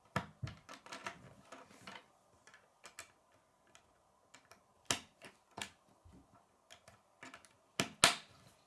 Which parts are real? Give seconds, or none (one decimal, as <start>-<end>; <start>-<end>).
0.0-8.7